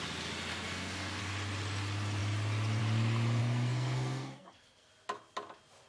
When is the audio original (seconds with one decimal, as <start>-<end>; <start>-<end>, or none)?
0.0-0.5; 1.2-3.4; 4.9-5.9